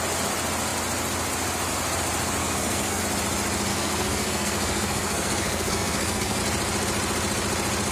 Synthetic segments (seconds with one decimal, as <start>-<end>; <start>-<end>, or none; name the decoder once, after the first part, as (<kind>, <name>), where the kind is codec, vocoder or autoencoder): 2.4-3.0 (codec, SNAC); 3.7-6.4